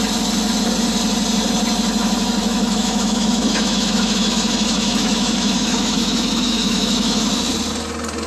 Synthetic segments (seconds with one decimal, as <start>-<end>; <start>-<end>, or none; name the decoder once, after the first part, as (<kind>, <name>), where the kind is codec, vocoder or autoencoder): 2.4-7.3 (autoencoder, DAC-VAE)